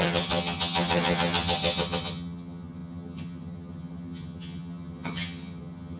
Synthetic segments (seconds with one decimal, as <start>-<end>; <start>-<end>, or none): 0.0-6.0